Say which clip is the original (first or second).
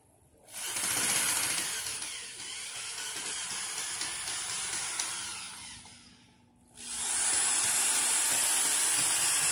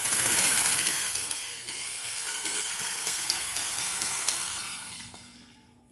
first